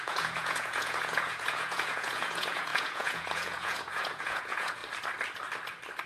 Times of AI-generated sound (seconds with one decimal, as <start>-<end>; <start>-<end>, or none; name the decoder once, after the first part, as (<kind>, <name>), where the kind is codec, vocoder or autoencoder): 0.0-4.8 (vocoder, Vocos)